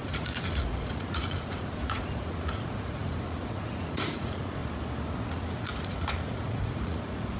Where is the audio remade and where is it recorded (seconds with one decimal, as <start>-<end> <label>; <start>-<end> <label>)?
0.0-4.6 remade; 4.6-5.2 recorded; 5.2-7.4 remade